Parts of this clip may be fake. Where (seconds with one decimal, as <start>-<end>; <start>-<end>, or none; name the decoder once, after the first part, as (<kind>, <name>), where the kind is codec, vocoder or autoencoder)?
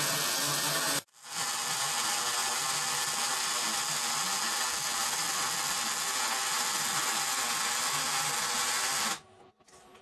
none